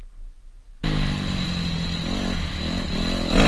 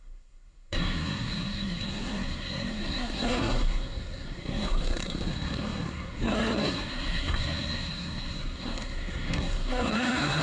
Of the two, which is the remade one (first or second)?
second